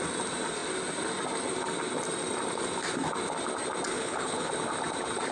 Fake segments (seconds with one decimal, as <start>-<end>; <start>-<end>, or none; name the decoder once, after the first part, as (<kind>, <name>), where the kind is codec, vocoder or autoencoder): 3.9-4.5 (codec, HILCodec)